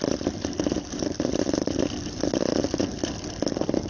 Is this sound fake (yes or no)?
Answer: no